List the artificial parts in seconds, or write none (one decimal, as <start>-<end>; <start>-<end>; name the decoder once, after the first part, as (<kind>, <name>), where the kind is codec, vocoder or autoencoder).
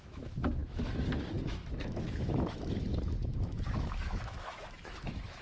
0.0-5.4 (autoencoder, DAC-VAE)